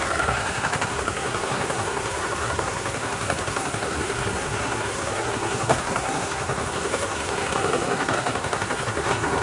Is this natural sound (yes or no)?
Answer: no